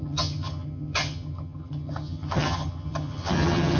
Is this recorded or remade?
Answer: remade